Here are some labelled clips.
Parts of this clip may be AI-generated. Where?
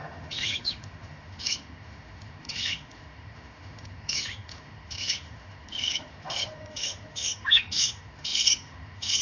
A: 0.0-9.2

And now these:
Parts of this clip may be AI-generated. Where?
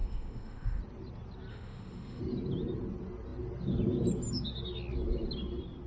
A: 0.0-0.8; 1.5-2.2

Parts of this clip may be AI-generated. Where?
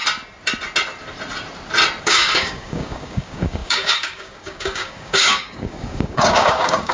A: 2.0-6.9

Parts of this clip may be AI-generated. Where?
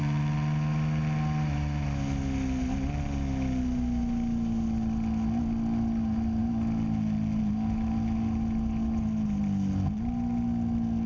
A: none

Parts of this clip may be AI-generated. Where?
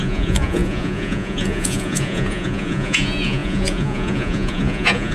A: 0.0-5.1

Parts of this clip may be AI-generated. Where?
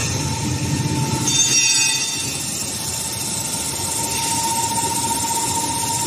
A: none